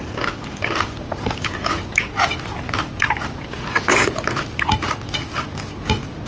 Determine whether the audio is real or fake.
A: real